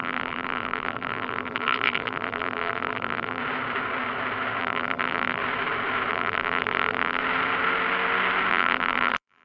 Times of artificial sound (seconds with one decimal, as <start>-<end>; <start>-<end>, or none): 0.0-3.4; 4.6-5.4; 6.1-7.2; 8.5-9.4